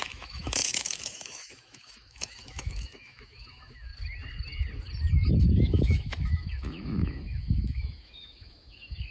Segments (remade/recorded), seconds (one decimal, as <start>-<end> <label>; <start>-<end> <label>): 0.0-3.9 remade; 3.9-5.1 recorded; 5.1-9.1 remade